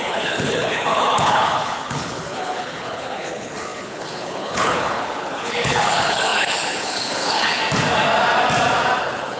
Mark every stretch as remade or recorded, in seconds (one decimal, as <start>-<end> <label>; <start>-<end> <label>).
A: 0.0-7.6 remade; 7.6-9.0 recorded; 9.0-9.4 remade